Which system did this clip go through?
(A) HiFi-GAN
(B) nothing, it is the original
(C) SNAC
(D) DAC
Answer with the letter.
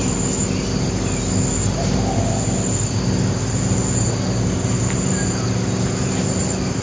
B